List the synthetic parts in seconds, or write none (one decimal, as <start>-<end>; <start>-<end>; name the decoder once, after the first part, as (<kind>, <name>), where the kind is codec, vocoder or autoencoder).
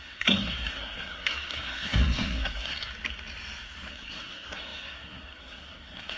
0.0-2.9 (codec, SNAC); 3.9-6.2